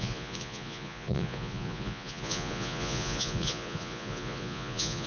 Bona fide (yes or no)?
no